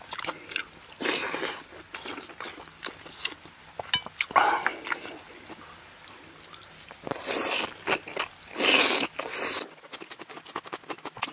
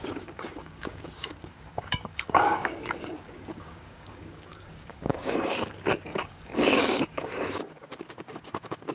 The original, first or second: first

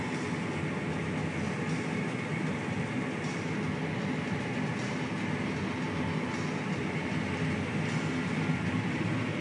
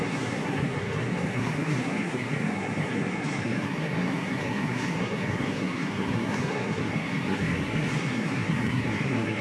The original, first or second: first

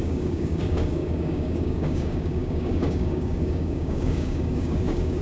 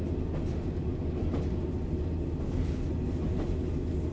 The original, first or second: second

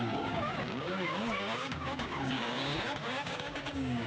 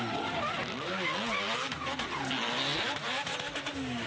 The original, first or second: second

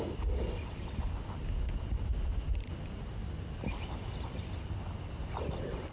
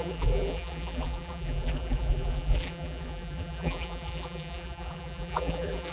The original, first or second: first